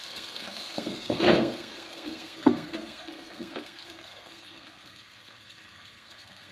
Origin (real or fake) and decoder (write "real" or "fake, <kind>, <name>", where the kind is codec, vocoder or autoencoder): fake, codec, SNAC